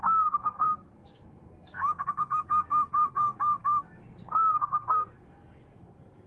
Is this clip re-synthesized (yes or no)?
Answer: yes